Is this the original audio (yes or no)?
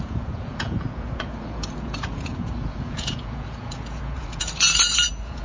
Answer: no